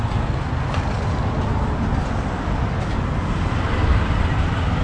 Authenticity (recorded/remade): recorded